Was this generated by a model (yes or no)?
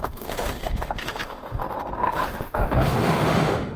yes